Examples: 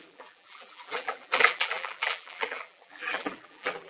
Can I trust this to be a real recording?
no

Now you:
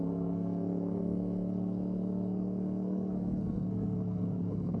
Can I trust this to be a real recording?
no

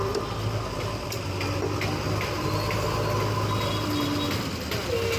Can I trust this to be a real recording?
yes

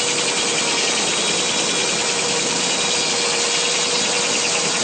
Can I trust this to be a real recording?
yes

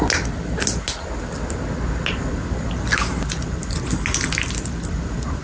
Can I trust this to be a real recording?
yes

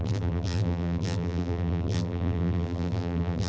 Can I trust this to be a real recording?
no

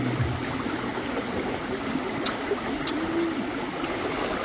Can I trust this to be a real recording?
yes